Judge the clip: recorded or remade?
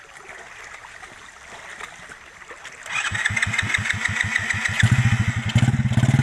recorded